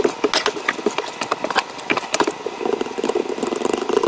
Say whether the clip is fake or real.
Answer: real